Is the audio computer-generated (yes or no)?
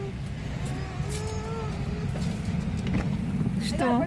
no